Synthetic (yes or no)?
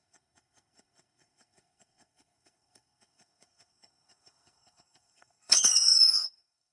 yes